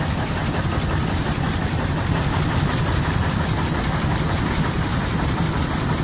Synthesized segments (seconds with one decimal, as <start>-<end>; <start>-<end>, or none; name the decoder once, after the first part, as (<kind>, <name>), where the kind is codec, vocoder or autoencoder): 4.9-5.5 (vocoder, BigVGAN v2)